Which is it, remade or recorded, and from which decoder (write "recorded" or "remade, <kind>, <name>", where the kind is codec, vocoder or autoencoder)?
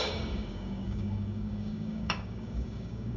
remade, codec, DAC